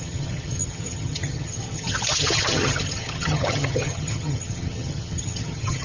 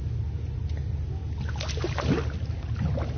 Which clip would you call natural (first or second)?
second